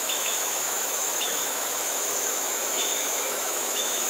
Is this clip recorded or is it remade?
remade